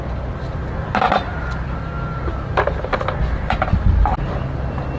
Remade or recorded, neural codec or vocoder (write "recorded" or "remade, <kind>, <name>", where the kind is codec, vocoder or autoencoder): recorded